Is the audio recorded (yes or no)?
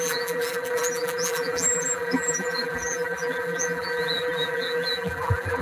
no